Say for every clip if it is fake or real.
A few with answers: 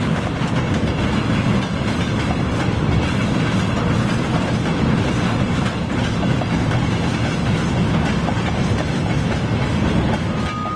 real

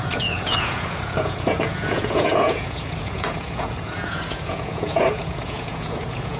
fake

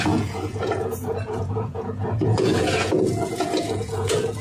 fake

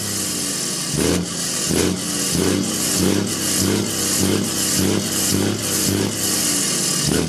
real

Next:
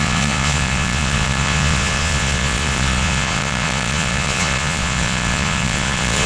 fake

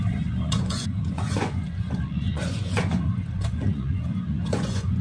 fake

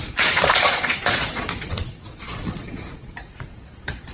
fake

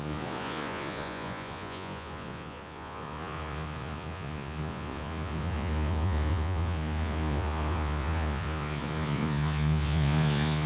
fake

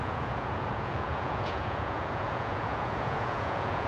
fake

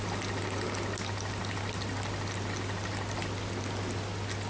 real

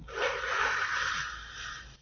real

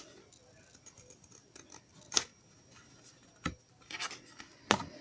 real